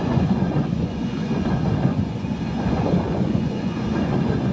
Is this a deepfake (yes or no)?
yes